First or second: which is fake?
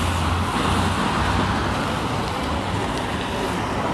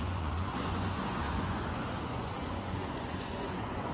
second